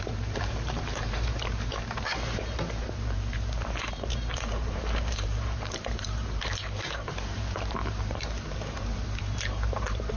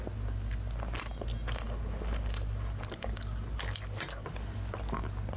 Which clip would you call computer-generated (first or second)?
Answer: first